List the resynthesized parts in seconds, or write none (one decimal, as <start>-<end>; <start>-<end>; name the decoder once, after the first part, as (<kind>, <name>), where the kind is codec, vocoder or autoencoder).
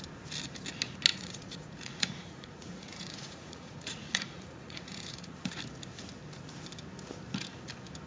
1.1-5.6 (vocoder, Vocos)